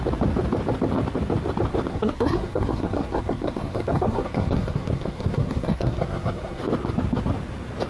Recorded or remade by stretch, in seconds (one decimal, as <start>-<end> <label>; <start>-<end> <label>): 0.0-1.9 recorded; 1.9-6.6 remade; 6.6-7.9 recorded

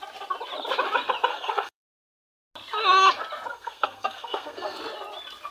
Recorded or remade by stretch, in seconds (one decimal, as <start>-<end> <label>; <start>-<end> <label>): 0.0-1.3 recorded; 1.3-2.0 remade; 2.0-3.5 recorded; 3.5-4.8 remade; 4.8-5.5 recorded